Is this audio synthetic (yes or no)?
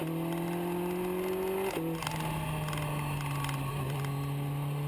no